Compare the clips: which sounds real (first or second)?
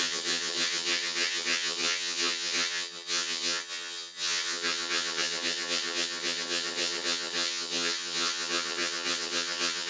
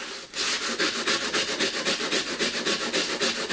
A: second